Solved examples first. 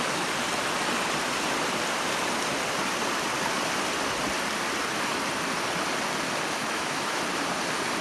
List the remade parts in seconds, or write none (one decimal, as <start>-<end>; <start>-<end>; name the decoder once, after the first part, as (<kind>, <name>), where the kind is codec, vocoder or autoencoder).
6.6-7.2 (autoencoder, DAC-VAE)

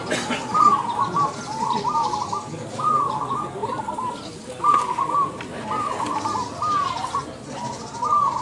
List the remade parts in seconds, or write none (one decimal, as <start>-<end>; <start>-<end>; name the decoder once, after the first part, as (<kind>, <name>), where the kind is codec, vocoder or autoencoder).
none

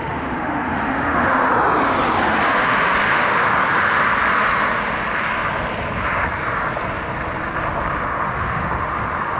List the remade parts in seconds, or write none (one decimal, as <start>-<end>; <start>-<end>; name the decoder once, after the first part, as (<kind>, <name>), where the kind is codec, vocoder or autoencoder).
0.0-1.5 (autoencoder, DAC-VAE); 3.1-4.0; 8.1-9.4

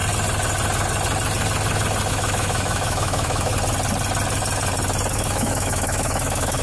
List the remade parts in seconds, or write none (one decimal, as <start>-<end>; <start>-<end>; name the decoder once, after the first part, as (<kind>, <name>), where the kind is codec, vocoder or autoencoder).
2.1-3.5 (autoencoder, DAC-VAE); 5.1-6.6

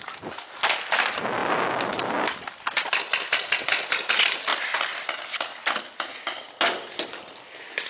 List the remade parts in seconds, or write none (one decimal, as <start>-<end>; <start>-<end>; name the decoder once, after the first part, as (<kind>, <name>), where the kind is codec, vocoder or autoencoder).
none

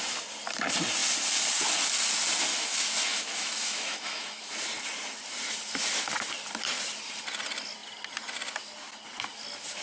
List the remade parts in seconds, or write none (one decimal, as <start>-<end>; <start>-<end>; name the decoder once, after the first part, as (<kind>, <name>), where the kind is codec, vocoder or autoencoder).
2.5-4.5 (autoencoder, DAC-VAE)

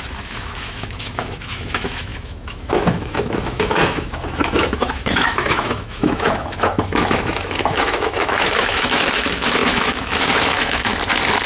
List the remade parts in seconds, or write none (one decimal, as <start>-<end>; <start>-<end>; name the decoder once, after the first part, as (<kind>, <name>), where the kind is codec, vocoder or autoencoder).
0.0-10.9 (autoencoder, DAC-VAE)